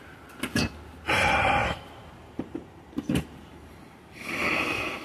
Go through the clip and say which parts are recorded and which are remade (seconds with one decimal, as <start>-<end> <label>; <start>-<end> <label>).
0.0-1.6 recorded; 1.6-3.8 remade; 3.8-5.0 recorded